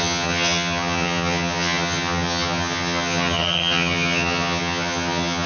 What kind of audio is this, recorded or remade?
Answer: remade